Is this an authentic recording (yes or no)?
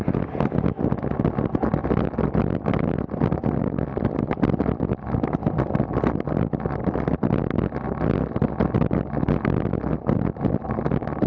yes